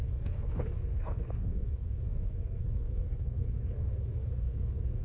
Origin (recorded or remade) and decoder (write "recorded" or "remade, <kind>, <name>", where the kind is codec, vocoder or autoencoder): remade, codec, SNAC